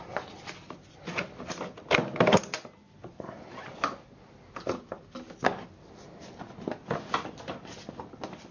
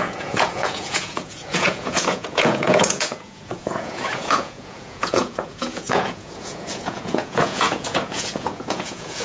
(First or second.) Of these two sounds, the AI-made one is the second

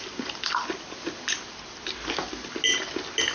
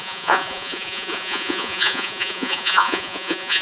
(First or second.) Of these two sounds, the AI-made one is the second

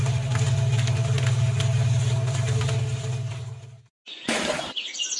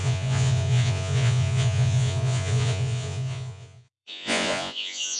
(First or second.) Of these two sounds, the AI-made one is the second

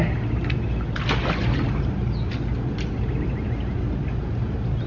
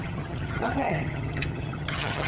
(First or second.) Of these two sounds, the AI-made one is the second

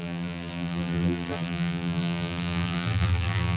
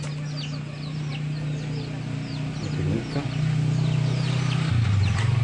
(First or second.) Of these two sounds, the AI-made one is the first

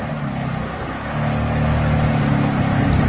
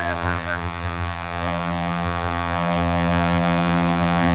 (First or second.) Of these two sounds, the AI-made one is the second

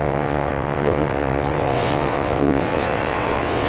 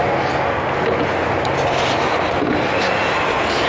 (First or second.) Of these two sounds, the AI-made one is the first